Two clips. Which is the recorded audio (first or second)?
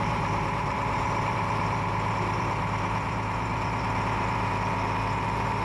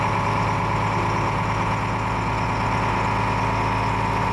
second